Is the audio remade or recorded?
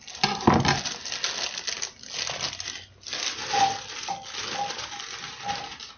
recorded